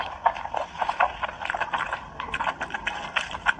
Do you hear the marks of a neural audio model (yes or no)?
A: no